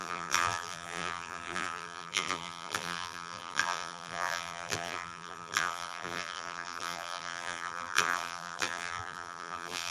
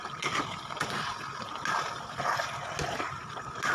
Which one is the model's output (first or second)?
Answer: first